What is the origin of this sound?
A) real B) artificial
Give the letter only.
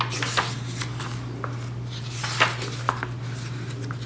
A